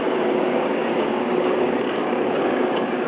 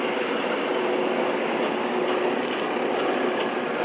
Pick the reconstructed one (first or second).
first